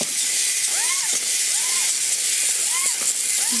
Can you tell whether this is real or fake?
real